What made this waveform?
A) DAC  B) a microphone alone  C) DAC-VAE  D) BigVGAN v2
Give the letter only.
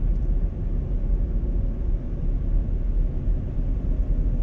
B